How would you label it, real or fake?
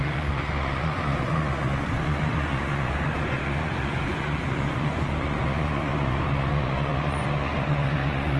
fake